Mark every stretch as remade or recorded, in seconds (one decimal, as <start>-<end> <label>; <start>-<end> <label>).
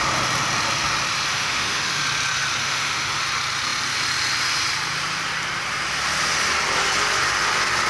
0.0-1.3 recorded; 1.3-2.0 remade; 2.0-2.6 recorded; 2.6-3.2 remade; 3.2-7.9 recorded